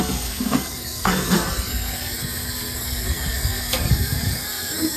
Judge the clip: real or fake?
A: fake